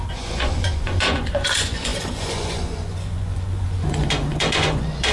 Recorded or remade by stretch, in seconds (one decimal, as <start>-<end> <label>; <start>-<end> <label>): 0.0-5.1 remade